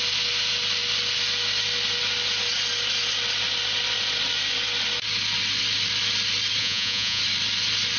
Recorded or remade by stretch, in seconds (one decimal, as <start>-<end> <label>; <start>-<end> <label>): 0.0-6.6 recorded; 6.6-7.2 remade; 7.2-8.0 recorded